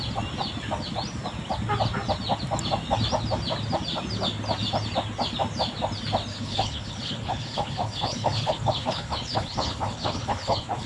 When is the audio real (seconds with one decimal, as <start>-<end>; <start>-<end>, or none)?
0.0-6.3